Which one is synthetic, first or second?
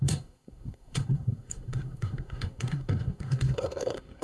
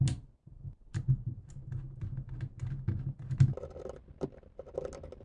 first